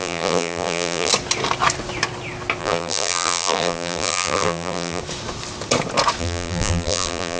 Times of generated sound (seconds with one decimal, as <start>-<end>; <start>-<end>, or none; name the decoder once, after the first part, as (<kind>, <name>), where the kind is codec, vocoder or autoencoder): 0.0-1.1 (vocoder, BigVGAN v2); 2.6-5.0; 6.2-7.4